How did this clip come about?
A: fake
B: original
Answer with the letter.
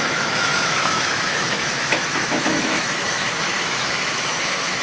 A